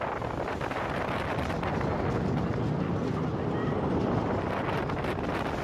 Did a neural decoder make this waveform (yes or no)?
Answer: no